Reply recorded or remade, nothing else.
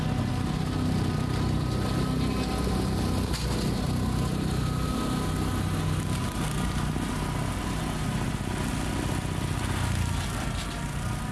recorded